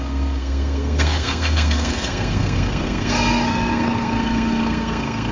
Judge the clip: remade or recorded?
remade